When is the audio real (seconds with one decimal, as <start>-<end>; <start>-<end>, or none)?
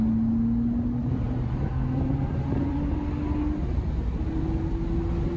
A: 0.0-1.0; 2.8-5.4